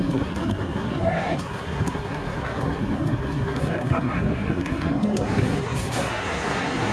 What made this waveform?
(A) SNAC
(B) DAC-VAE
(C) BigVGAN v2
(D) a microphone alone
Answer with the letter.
A